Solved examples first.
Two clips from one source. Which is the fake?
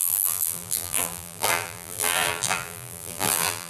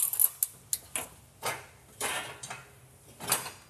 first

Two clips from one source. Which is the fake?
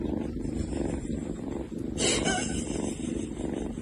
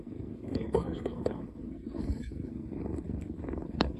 second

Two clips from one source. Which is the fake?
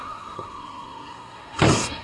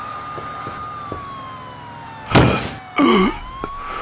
first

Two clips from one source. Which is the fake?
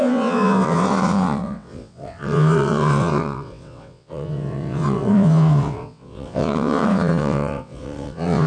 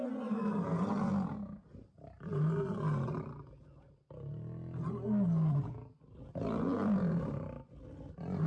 first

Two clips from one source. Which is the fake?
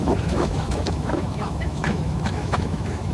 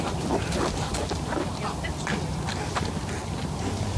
first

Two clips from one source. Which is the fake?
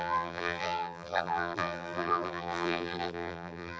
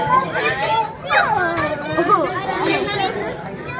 first